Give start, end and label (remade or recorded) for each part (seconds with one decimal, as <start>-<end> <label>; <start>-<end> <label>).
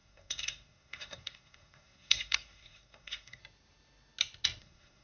0.0-3.4 remade; 3.4-4.6 recorded; 4.6-5.0 remade